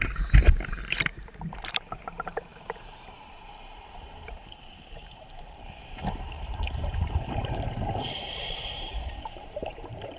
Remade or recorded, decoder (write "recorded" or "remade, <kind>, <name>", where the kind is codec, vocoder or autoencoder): remade, vocoder, BigVGAN v2